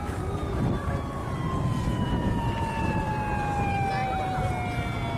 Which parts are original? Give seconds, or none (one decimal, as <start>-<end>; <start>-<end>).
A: 0.0-1.2; 3.1-5.2